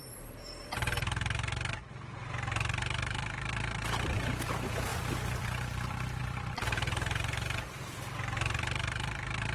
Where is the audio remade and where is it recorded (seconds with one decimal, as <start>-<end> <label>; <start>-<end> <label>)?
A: 0.0-4.9 remade; 4.9-6.2 recorded; 6.2-9.5 remade